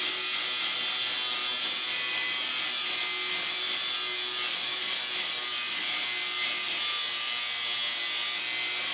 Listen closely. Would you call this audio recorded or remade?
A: recorded